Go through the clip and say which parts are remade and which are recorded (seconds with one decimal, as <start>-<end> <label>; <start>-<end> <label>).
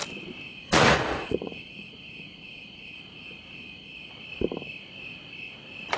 0.0-0.5 recorded; 0.5-4.1 remade; 4.1-6.0 recorded